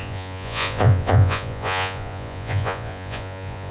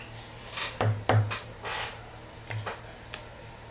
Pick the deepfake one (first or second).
first